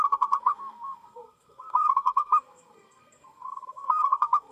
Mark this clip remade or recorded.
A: remade